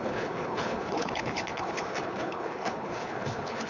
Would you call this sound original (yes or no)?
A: no